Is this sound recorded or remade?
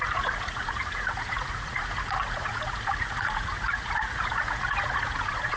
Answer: remade